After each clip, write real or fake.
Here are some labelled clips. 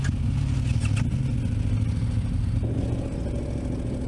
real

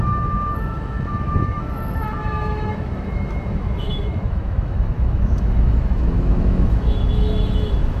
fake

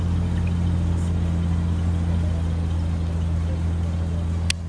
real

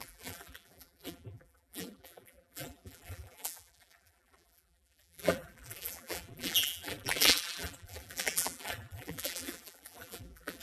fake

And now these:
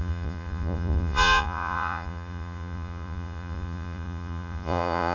fake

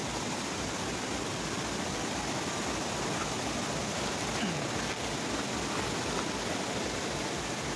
real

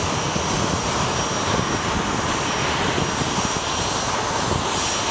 real